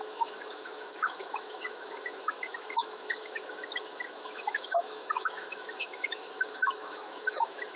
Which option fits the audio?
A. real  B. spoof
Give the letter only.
B